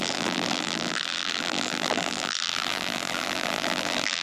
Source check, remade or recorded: remade